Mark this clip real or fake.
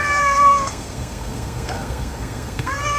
fake